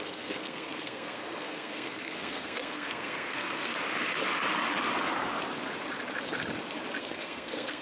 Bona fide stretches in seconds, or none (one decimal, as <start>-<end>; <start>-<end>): 3.7-7.0